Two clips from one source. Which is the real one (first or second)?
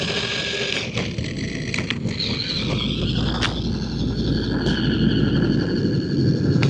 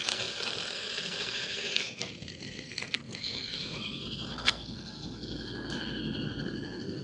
first